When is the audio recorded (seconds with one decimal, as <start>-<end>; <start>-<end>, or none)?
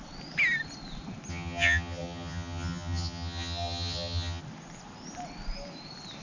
0.0-1.3; 4.4-6.2